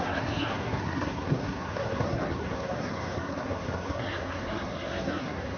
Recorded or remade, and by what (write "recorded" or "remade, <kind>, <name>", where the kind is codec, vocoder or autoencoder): remade, codec, SNAC